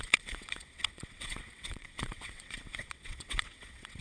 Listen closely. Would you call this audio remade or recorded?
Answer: remade